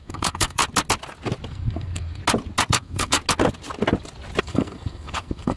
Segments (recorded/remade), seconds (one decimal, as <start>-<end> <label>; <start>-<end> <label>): 0.0-0.6 remade; 0.6-1.5 recorded; 1.5-2.2 remade; 2.2-2.7 recorded; 2.7-3.2 remade; 3.2-4.4 recorded; 4.4-5.6 remade